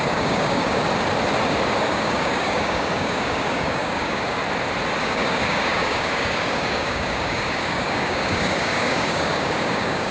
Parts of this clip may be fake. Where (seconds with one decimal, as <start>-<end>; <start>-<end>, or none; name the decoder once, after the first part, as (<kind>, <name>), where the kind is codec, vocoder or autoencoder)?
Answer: 0.0-0.8 (codec, DAC); 1.8-4.4; 5.0-10.1